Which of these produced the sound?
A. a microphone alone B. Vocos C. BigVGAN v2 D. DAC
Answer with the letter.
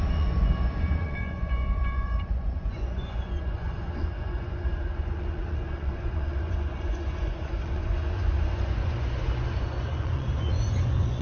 B